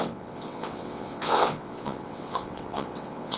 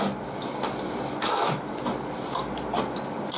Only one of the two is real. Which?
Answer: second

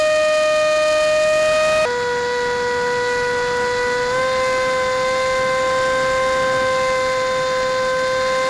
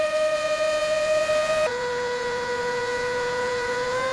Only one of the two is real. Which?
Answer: first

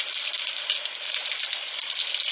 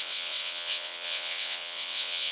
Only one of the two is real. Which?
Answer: first